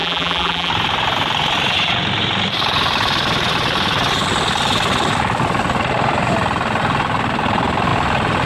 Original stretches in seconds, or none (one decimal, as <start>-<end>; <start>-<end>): 0.7-8.5